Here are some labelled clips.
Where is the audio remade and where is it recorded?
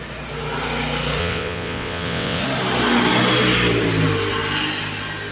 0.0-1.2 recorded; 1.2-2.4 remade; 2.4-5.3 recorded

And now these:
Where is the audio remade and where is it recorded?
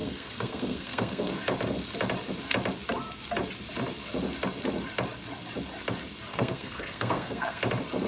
0.0-1.3 remade; 1.3-6.3 recorded; 6.3-7.6 remade; 7.6-8.1 recorded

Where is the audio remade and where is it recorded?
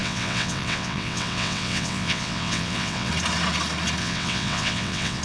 0.0-3.1 remade; 3.1-4.0 recorded; 4.0-5.2 remade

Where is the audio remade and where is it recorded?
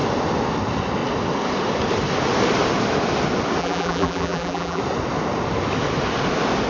0.0-3.6 recorded; 3.6-4.8 remade; 4.8-6.7 recorded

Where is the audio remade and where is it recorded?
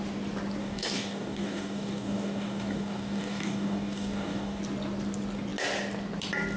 0.0-0.6 recorded; 0.6-4.6 remade; 4.6-6.6 recorded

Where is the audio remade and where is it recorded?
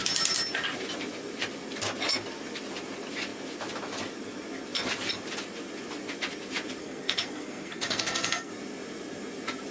0.0-6.8 recorded; 6.8-8.5 remade; 8.5-9.7 recorded